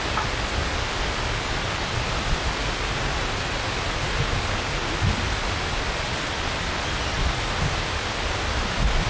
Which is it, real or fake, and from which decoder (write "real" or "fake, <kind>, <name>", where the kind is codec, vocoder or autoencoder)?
real